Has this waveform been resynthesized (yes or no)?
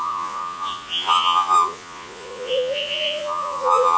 yes